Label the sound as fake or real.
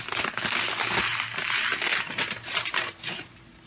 real